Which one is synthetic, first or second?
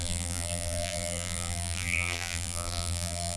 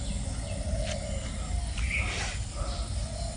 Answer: first